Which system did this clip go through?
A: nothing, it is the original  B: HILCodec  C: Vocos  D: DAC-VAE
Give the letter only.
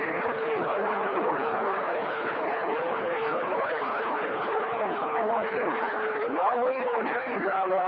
B